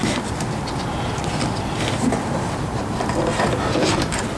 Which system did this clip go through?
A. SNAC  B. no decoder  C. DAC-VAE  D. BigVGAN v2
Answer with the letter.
B